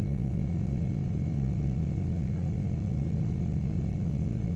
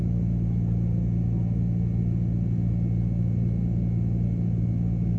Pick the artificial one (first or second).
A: first